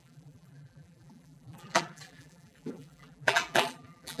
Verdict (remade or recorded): remade